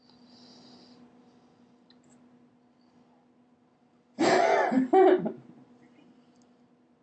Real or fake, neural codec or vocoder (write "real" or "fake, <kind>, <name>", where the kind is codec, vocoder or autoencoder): real